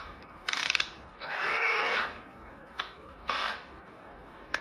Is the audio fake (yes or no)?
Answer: yes